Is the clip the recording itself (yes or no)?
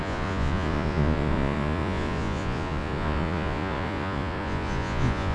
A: no